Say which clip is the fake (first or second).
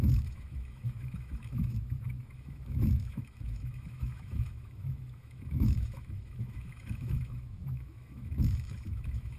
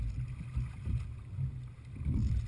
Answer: first